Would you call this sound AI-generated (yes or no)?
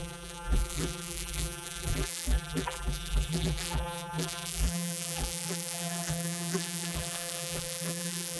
yes